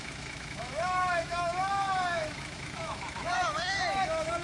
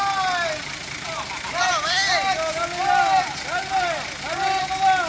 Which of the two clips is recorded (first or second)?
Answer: second